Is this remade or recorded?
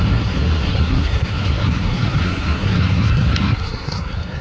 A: remade